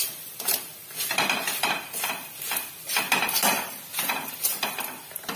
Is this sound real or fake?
fake